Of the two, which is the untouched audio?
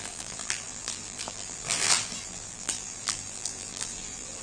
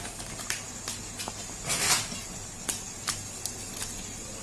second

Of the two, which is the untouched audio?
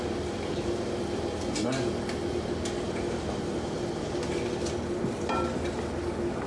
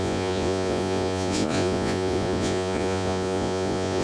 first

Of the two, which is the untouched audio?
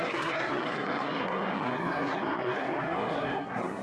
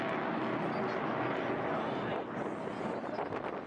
second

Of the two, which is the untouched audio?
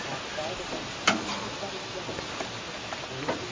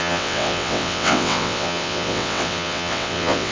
first